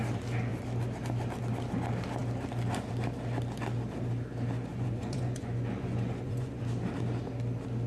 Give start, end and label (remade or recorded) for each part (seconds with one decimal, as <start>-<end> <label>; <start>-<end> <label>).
0.0-4.7 recorded; 4.7-6.6 remade; 6.6-7.9 recorded